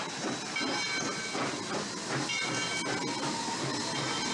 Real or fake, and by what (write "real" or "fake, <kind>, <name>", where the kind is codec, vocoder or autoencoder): real